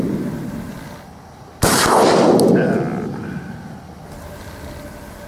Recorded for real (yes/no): yes